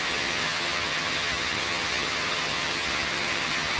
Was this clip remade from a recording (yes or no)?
yes